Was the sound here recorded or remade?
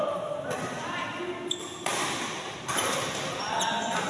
recorded